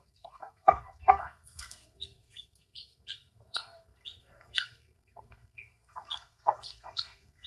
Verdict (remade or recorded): remade